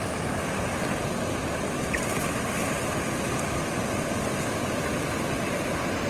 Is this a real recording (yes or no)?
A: yes